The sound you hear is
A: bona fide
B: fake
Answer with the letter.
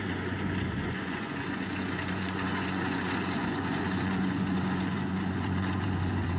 B